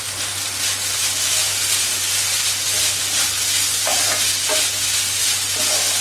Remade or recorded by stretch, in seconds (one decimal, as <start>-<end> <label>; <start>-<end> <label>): 0.0-6.0 recorded